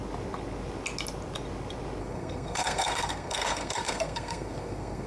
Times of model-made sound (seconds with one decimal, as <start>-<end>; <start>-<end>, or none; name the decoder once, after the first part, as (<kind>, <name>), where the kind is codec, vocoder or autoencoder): 2.0-5.1 (codec, SNAC)